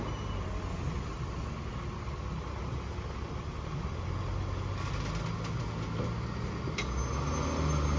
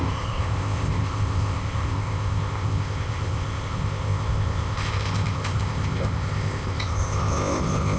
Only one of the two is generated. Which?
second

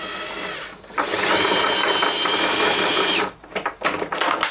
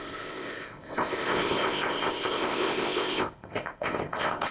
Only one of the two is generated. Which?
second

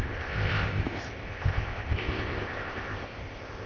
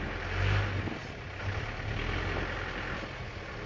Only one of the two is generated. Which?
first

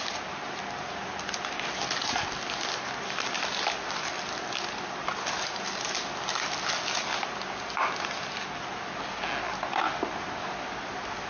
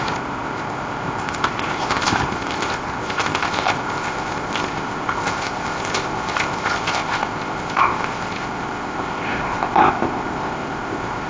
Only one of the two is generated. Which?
second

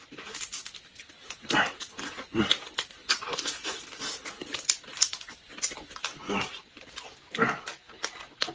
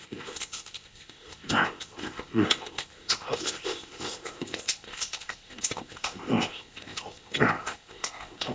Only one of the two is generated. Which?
second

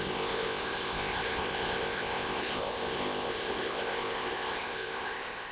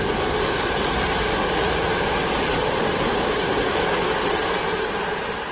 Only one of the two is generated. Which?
first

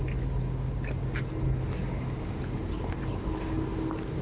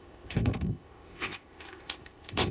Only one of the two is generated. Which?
second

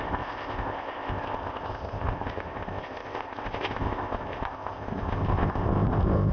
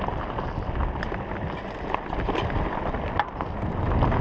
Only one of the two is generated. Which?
first